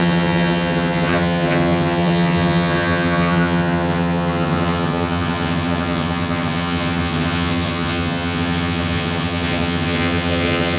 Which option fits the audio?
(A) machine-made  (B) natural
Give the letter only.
A